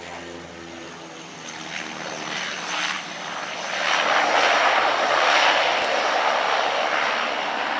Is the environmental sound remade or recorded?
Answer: recorded